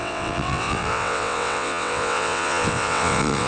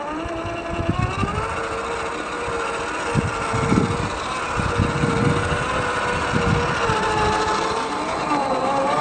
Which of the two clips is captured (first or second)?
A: second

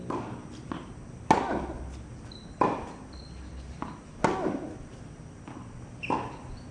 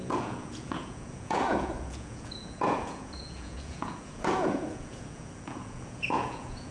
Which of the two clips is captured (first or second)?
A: first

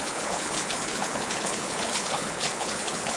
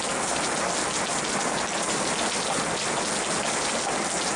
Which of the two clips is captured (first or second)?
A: second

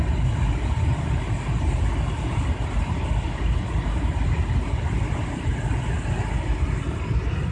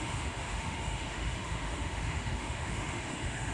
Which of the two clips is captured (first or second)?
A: first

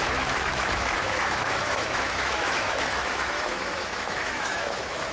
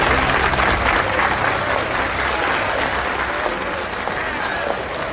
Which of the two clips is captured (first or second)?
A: second